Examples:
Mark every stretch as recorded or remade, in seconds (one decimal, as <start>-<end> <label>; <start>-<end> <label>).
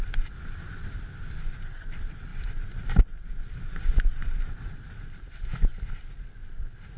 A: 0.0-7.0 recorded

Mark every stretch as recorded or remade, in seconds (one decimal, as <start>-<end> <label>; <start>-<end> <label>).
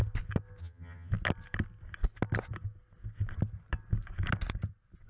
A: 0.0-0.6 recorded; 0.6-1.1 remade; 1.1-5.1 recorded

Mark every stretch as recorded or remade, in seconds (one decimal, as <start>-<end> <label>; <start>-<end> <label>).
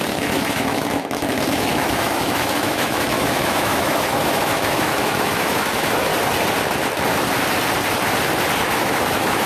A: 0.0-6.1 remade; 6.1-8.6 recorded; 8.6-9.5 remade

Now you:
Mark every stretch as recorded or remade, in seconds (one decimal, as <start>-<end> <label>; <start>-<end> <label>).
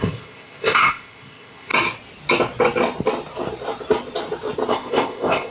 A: 0.0-1.7 remade; 1.7-4.7 recorded; 4.7-5.5 remade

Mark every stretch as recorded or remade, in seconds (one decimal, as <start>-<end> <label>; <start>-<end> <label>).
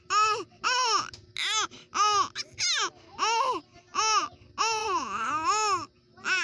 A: 0.0-4.8 recorded; 4.8-5.3 remade; 5.3-6.4 recorded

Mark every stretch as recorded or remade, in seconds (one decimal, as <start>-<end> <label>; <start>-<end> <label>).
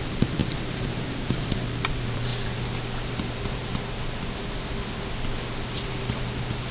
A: 0.0-2.3 remade; 2.3-5.9 recorded; 5.9-6.7 remade